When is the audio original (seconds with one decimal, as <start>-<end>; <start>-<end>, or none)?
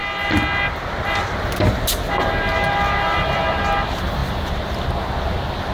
0.0-5.7